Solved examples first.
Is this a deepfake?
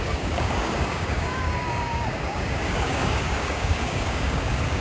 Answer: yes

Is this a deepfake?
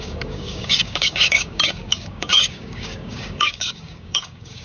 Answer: yes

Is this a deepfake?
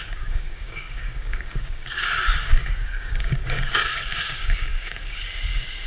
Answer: yes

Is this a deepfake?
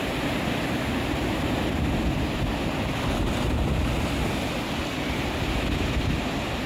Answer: no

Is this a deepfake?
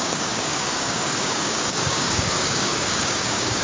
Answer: yes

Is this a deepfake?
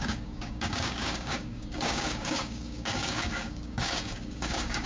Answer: yes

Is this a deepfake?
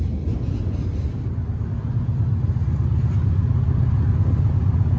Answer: no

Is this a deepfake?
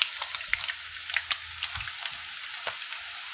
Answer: no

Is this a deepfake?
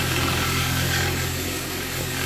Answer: yes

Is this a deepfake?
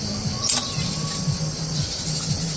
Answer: no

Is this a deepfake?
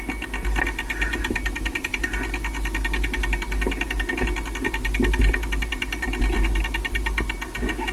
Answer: no